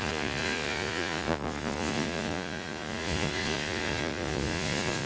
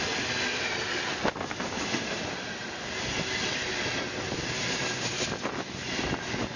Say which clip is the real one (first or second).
second